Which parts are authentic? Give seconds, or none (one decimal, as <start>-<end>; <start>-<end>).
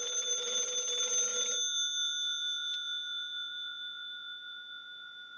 0.0-5.4